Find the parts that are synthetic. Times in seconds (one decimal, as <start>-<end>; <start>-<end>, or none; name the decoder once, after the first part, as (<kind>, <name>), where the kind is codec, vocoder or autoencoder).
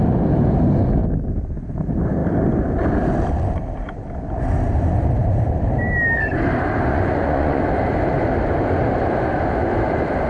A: 6.9-7.6 (vocoder, Vocos)